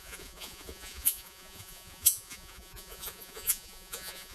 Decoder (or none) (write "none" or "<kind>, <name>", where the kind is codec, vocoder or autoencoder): vocoder, Vocos